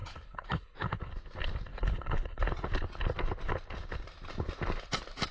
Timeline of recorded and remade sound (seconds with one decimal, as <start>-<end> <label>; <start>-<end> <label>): 0.0-1.1 remade; 1.1-1.7 recorded; 1.7-2.4 remade; 2.4-5.3 recorded